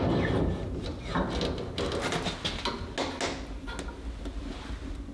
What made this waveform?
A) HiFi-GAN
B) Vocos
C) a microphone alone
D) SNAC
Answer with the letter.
C